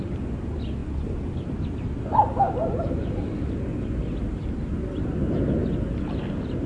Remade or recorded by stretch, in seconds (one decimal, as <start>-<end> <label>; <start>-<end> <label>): 0.0-6.7 recorded